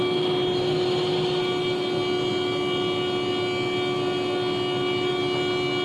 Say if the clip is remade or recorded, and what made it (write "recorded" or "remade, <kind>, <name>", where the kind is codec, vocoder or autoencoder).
recorded